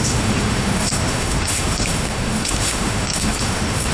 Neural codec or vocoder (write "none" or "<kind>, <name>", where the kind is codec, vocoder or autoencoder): autoencoder, DAC-VAE